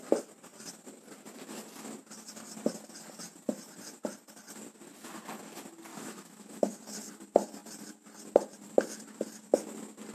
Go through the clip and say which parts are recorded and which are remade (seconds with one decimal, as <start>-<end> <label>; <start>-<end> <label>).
0.0-5.9 recorded; 5.9-6.7 remade; 6.7-10.1 recorded